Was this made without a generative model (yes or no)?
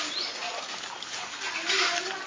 no